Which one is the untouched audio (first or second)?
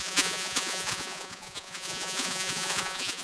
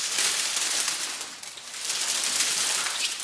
second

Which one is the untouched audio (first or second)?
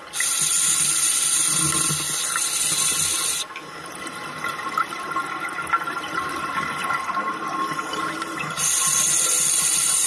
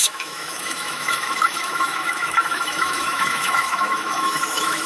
first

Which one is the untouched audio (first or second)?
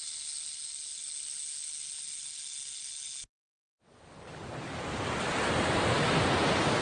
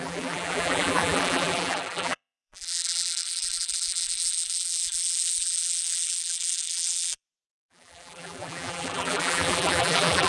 first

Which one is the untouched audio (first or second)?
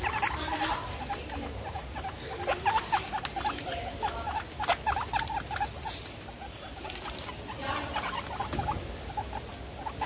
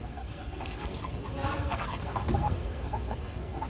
first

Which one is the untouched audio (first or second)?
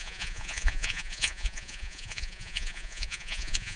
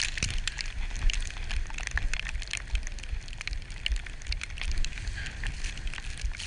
second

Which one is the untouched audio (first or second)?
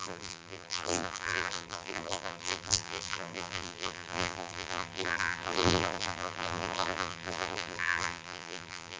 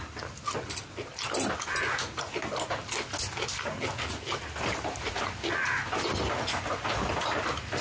second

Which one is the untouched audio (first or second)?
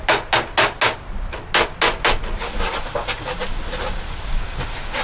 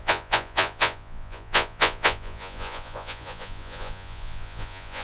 first